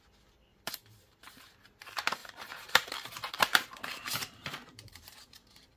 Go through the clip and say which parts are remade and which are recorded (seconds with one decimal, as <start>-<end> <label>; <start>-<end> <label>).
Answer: 0.0-0.5 recorded; 0.5-1.3 remade; 1.3-2.2 recorded; 2.2-5.8 remade